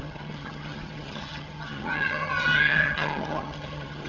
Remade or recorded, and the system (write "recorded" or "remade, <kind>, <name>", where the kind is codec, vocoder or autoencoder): remade, vocoder, HiFi-GAN